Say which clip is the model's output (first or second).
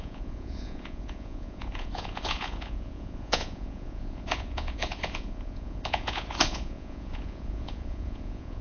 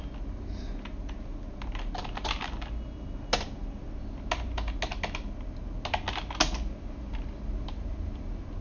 first